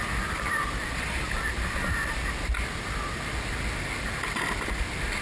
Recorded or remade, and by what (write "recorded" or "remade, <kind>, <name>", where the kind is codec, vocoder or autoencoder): recorded